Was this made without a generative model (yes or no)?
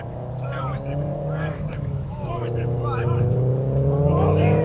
no